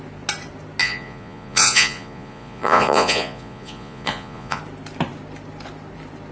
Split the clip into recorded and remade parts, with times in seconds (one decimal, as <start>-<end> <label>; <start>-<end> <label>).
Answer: 0.0-0.8 recorded; 0.8-4.6 remade; 4.6-6.3 recorded